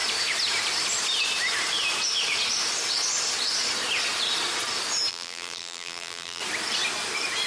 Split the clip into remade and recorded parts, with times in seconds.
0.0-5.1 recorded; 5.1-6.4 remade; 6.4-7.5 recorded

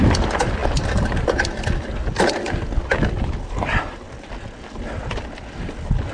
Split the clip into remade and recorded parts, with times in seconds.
0.0-6.1 recorded

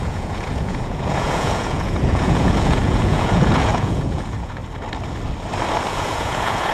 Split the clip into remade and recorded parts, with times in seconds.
0.0-4.6 remade; 4.6-5.9 recorded; 5.9-6.7 remade

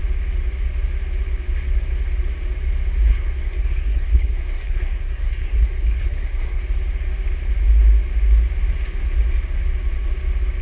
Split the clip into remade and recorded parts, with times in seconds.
0.0-3.1 recorded; 3.1-6.6 remade; 6.6-10.6 recorded

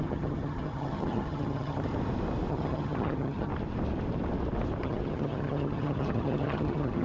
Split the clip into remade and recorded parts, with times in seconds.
0.0-1.9 remade; 1.9-2.5 recorded; 2.5-3.5 remade; 3.5-4.8 recorded; 4.8-7.0 remade